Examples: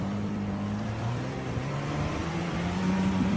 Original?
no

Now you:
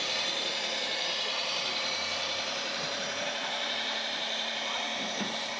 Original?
no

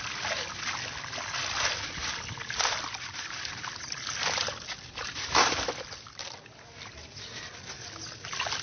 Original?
yes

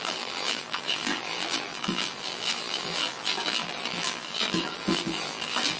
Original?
no